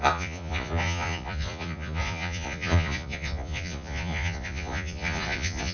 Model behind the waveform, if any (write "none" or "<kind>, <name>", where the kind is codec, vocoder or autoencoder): vocoder, Vocos